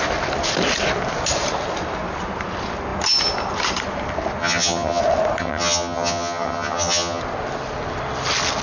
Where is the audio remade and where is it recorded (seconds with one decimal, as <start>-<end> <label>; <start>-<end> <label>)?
0.0-4.4 recorded; 4.4-5.0 remade; 5.0-5.4 recorded; 5.4-7.2 remade; 7.2-8.6 recorded